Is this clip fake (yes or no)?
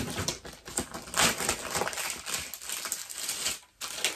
no